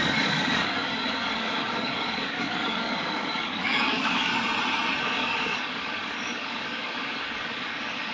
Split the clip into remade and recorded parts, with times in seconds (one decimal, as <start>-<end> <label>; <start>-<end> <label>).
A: 0.0-4.3 remade; 4.3-5.0 recorded; 5.0-8.1 remade